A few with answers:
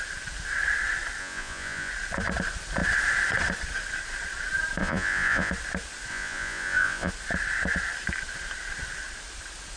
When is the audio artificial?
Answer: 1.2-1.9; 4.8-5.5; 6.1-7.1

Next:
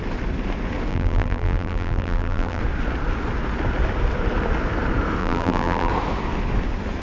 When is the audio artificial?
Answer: 0.9-2.6; 5.2-5.9

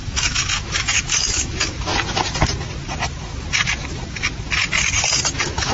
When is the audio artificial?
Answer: 0.0-1.9; 5.3-5.7

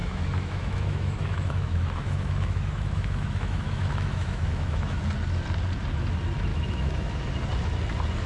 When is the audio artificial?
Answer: 0.0-5.0; 6.5-7.2

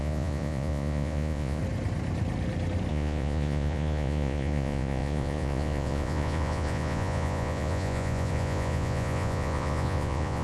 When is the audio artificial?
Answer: 0.0-1.6; 2.9-10.4

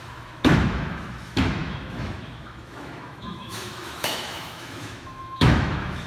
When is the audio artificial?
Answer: 0.0-6.1

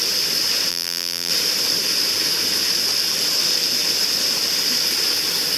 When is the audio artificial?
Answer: 0.7-1.3

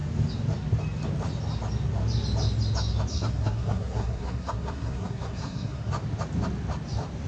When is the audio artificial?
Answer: 3.1-5.9